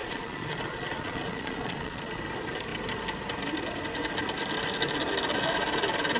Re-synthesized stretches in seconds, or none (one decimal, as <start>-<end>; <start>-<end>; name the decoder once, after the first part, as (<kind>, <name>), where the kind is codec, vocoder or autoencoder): 0.0-2.2 (vocoder, Vocos)